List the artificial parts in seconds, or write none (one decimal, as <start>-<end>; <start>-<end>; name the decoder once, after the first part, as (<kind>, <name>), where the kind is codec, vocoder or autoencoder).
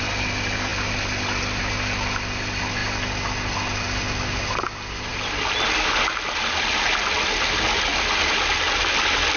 none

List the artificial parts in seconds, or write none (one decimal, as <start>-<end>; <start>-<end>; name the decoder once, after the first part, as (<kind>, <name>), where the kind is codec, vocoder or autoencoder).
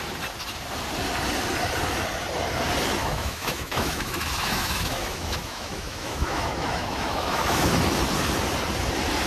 3.0-7.7 (autoencoder, DAC-VAE)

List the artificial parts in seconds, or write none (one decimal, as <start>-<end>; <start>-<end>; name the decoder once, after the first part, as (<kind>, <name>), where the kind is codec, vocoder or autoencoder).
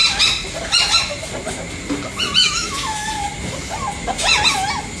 2.4-3.1 (autoencoder, DAC-VAE)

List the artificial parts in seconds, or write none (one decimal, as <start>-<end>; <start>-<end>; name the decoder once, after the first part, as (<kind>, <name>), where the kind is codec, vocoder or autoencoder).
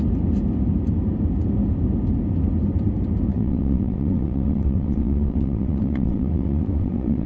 3.3-7.3 (vocoder, WaveNeXt)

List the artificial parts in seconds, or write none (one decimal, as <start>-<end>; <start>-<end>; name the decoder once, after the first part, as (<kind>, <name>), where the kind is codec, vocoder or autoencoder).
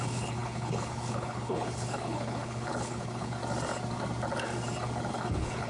0.0-3.4 (codec, HILCodec); 5.1-5.7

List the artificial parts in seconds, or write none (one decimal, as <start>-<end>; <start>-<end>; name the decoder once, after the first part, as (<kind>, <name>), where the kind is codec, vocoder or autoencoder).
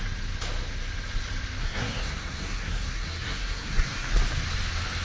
1.6-4.1 (codec, SNAC)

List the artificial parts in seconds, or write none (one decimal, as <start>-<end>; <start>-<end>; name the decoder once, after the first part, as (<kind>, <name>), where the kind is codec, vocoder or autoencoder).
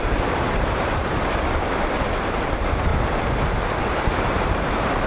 0.0-1.0 (vocoder, BigVGAN v2); 1.9-2.9; 3.8-5.1